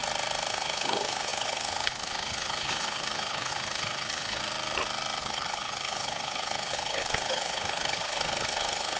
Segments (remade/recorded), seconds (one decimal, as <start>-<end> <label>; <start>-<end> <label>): 0.0-0.5 recorded; 0.5-4.4 remade; 4.4-5.2 recorded; 5.2-9.0 remade

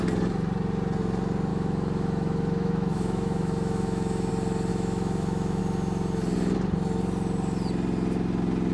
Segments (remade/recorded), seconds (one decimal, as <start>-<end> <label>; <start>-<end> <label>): 0.0-1.5 recorded; 1.5-4.3 remade; 4.3-4.7 recorded; 4.7-5.6 remade; 5.6-8.7 recorded

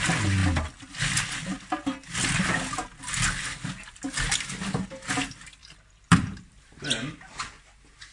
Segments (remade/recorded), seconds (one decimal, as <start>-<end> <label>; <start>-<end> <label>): 0.0-5.6 recorded; 5.6-6.8 remade; 6.8-8.1 recorded

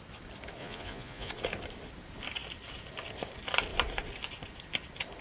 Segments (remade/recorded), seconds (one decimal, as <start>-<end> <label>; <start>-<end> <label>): 0.0-0.6 recorded; 0.6-1.3 remade; 1.3-5.2 recorded

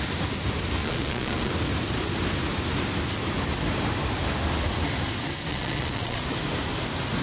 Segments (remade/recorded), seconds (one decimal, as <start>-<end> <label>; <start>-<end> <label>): 0.0-0.8 recorded; 0.8-1.5 remade; 1.5-5.5 recorded; 5.5-6.2 remade; 6.2-7.2 recorded